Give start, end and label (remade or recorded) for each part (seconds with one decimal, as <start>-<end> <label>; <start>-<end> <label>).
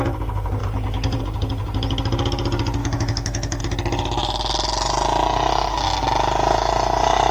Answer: 0.0-2.8 recorded; 2.8-3.6 remade; 3.6-7.3 recorded